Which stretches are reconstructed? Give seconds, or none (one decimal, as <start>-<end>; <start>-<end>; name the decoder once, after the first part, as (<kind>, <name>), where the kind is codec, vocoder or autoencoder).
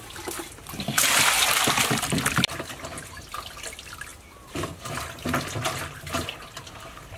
none